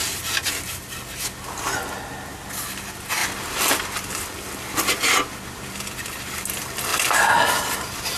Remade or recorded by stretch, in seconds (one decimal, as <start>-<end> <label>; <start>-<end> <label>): 0.0-2.7 recorded; 2.7-8.2 remade